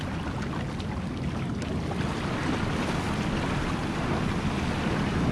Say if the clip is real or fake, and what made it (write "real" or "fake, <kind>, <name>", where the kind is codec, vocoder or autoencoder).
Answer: real